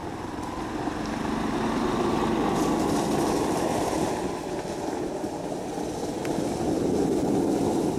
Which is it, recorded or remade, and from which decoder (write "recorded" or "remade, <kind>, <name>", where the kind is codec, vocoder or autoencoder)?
recorded